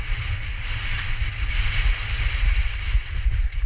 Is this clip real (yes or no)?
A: no